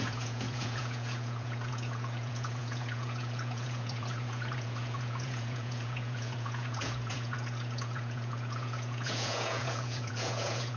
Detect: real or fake fake